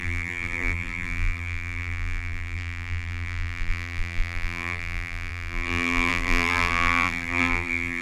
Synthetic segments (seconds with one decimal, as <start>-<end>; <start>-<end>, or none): 0.0-8.0